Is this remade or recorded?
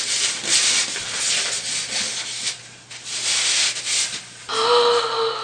recorded